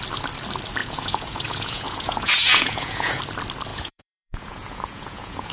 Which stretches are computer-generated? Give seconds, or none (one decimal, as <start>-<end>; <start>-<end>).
0.8-3.2; 3.7-5.5